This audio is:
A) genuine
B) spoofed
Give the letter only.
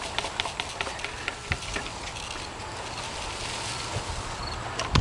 A